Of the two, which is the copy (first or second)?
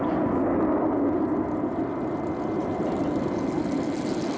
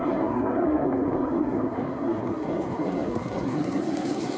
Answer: second